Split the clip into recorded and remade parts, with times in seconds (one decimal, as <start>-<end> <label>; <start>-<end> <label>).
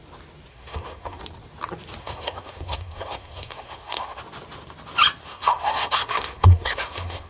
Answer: 0.0-0.5 recorded; 0.5-1.2 remade; 1.2-2.0 recorded; 2.0-4.2 remade; 4.2-5.2 recorded; 5.2-7.3 remade